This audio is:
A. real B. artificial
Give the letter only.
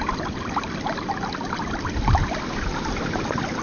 A